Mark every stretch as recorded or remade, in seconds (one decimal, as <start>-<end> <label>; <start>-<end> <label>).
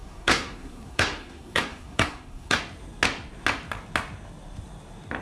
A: 0.0-2.6 remade; 2.6-5.2 recorded